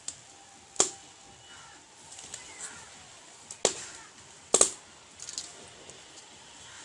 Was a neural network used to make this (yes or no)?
no